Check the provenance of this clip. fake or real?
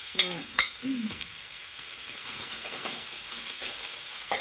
fake